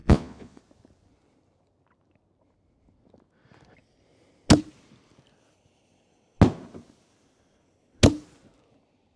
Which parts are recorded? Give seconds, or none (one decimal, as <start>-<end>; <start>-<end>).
0.6-9.2